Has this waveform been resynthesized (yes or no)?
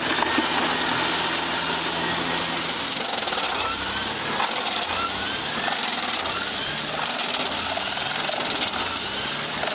no